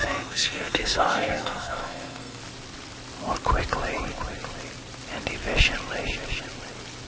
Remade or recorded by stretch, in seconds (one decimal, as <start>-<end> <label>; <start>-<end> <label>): 0.0-2.4 remade; 2.4-7.1 recorded